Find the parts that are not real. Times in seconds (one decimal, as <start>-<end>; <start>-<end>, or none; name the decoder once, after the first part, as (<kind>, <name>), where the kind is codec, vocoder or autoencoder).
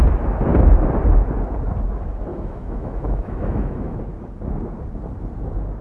2.3-4.0 (autoencoder, DAC-VAE)